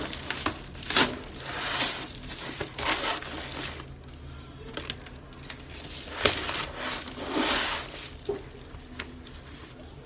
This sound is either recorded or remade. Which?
recorded